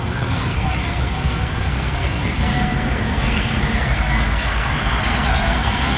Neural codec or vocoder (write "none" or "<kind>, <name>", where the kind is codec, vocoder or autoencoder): codec, SNAC